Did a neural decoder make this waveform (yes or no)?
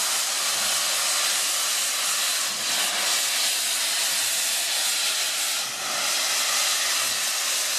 no